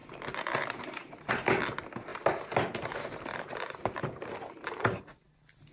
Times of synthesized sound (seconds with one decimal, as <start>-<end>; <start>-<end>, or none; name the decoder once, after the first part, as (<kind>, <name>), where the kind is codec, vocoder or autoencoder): 0.0-1.3 (vocoder, BigVGAN v2); 2.1-5.0